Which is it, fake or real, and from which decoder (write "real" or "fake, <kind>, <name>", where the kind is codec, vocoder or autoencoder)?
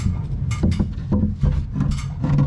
real